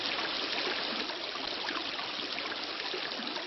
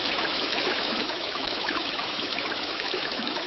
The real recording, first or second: first